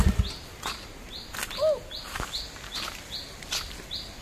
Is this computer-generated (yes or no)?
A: no